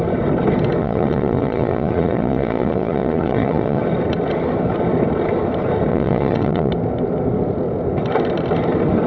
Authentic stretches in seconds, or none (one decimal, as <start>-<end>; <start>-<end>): 0.0-0.8; 3.8-5.9; 6.7-9.1